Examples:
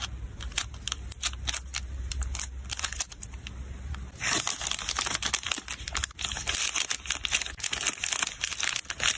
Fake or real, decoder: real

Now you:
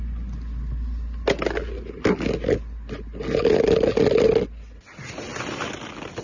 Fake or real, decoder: real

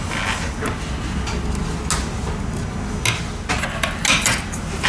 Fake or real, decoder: real